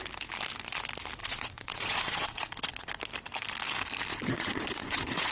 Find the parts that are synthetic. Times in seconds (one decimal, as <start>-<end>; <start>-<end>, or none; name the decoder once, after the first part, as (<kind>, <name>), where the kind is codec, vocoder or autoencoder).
1.2-2.9 (vocoder, Vocos); 4.1-5.3